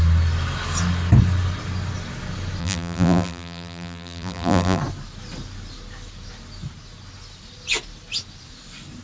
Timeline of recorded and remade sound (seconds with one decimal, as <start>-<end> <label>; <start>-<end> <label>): 0.0-2.6 recorded; 2.6-4.8 remade; 4.8-9.0 recorded